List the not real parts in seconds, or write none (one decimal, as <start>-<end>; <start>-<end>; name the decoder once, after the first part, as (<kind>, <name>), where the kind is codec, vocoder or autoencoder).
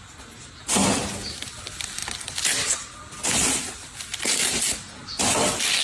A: none